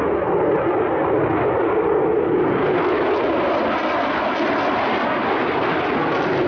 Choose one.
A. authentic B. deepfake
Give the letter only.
A